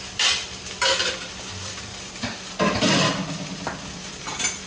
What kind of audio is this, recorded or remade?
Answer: remade